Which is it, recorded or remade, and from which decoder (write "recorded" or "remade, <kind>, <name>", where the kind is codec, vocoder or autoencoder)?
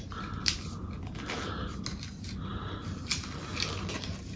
recorded